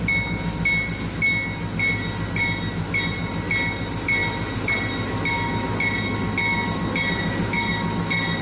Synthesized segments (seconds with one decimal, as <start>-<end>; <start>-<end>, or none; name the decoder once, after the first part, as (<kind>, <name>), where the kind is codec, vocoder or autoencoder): none